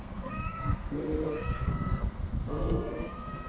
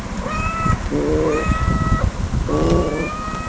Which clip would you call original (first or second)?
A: second